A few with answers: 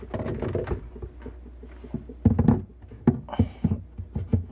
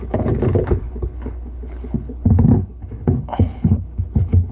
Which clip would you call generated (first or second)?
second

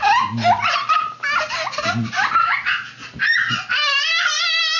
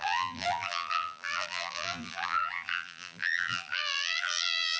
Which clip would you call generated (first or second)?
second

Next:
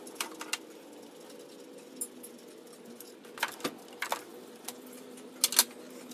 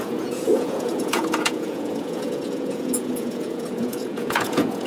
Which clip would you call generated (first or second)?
second